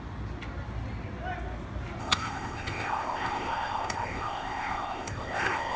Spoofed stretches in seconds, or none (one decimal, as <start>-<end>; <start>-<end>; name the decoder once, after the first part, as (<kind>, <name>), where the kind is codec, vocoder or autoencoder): 2.0-5.8 (codec, ZipCodec)